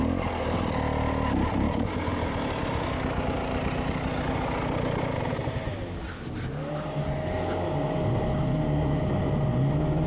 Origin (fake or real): real